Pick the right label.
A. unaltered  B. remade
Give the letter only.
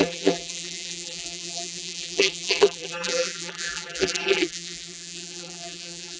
B